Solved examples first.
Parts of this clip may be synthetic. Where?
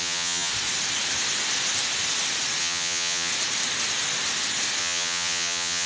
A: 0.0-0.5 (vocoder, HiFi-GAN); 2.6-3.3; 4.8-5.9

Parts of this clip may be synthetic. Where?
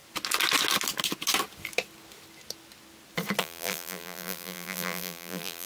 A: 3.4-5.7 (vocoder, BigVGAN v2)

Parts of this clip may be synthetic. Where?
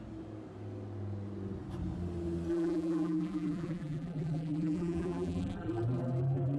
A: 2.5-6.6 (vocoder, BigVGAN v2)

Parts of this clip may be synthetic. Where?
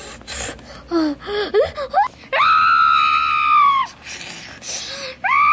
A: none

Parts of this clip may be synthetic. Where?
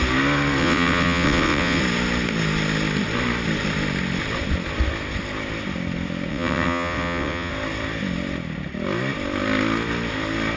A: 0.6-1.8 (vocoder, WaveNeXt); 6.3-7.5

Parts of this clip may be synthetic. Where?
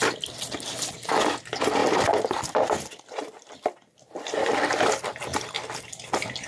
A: 1.8-2.4 (vocoder, BigVGAN v2); 3.4-4.5